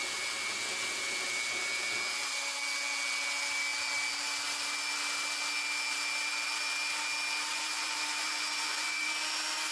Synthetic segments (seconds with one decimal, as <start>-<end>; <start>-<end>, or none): 7.5-9.1